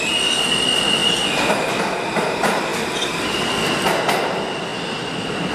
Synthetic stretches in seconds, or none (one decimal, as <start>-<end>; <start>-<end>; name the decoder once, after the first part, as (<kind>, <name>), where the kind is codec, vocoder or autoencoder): 0.0-1.0 (vocoder, BigVGAN v2); 1.8-2.7; 4.0-5.5